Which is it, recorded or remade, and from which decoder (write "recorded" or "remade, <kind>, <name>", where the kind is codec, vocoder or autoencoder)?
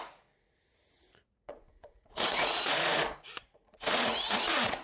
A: remade, vocoder, Vocos